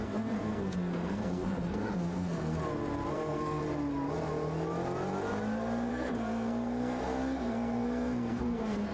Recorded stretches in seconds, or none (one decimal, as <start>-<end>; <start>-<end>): 2.6-3.1; 3.6-5.9